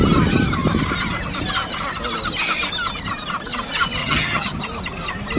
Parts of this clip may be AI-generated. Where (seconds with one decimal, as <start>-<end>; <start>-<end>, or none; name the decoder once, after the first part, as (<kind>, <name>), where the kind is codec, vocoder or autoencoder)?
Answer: 4.0-4.6 (vocoder, HiFi-GAN)